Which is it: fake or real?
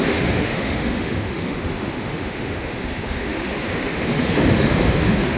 fake